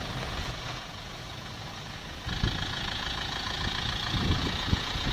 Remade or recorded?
remade